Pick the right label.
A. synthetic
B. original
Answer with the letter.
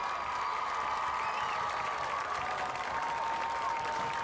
A